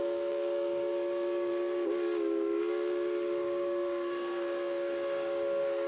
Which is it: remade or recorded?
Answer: remade